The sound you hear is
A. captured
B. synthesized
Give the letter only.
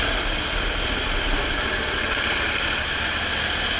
A